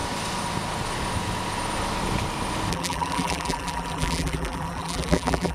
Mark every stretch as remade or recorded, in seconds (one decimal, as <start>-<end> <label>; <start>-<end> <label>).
0.0-2.7 recorded; 2.7-5.5 remade